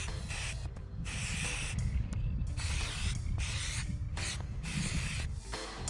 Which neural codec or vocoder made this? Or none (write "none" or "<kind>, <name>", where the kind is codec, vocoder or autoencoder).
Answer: none